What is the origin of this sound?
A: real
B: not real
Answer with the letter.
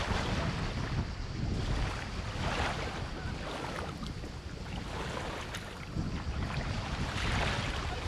A